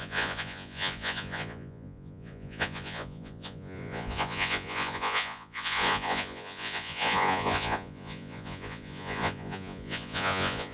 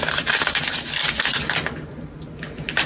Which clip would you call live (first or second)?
second